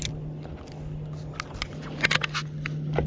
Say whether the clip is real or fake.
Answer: real